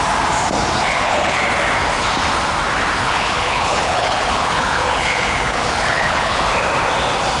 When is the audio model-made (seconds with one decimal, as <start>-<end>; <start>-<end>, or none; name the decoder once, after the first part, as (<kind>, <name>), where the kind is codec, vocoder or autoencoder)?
0.9-1.4 (codec, HILCodec); 3.0-6.4